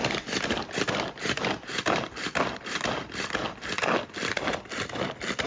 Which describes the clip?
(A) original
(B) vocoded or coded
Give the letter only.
A